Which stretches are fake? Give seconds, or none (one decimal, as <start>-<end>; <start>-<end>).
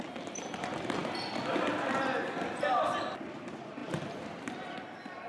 0.0-5.3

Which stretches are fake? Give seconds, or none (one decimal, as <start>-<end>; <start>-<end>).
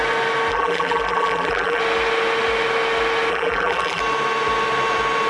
0.5-1.8; 3.3-4.0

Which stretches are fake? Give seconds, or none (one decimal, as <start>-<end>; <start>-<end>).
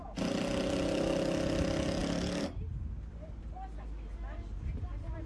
none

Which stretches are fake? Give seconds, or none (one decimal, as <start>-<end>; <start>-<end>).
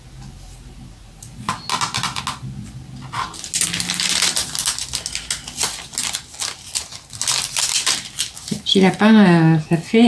none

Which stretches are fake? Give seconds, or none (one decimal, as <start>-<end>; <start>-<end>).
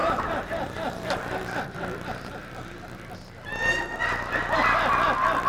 0.0-1.2